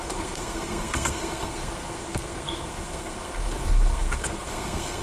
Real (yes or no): no